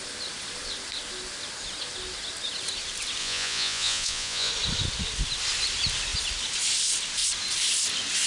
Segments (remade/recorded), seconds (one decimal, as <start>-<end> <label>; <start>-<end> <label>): 0.0-3.2 recorded; 3.2-4.5 remade; 4.5-8.3 recorded